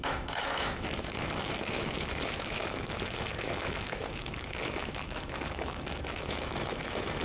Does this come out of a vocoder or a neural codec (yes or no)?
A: yes